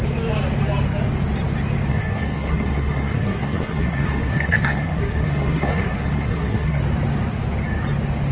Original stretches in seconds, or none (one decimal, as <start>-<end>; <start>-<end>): 0.0-1.9; 6.8-8.3